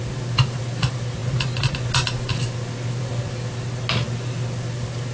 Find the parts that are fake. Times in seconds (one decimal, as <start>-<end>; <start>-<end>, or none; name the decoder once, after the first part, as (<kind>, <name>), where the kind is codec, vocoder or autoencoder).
none